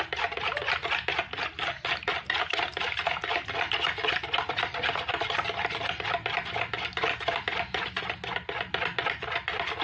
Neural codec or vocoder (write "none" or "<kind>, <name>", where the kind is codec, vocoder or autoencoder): none